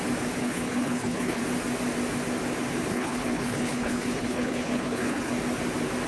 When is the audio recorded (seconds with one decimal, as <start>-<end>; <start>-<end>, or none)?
0.0-0.4; 1.4-2.9; 5.3-6.1